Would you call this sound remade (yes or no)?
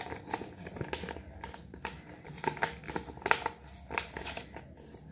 no